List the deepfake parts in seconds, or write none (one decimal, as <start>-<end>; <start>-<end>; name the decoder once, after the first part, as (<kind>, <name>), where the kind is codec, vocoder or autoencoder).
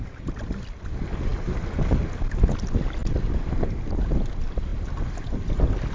none